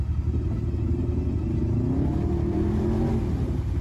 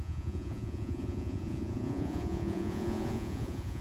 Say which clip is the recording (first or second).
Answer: first